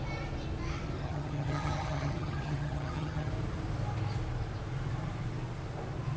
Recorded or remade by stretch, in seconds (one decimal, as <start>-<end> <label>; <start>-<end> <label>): 0.0-1.0 recorded; 1.0-3.3 remade; 3.3-6.2 recorded